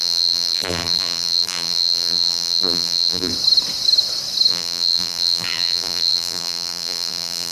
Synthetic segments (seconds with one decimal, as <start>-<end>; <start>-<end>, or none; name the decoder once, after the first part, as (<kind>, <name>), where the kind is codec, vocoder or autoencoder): 0.0-3.3 (vocoder, BigVGAN v2); 4.5-7.5